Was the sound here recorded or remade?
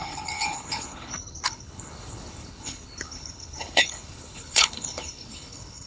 remade